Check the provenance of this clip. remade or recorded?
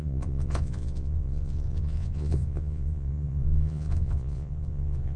remade